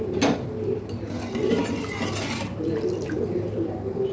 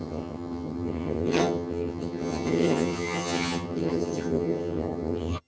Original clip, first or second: first